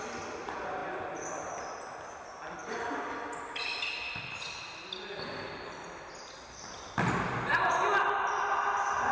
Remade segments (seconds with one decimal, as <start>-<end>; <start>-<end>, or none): none